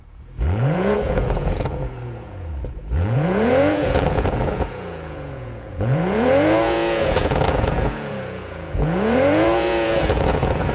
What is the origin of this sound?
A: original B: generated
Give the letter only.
B